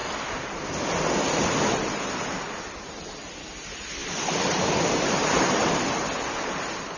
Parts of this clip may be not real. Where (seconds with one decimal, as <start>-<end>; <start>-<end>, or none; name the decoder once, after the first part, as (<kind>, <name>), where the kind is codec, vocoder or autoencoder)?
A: 4.0-5.7 (vocoder, BigVGAN v2)